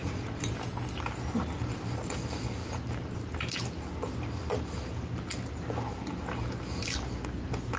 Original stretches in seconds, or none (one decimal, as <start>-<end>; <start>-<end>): 0.5-7.8